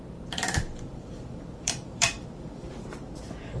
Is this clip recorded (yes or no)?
no